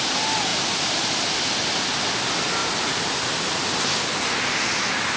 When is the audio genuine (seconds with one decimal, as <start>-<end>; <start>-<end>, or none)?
0.0-5.2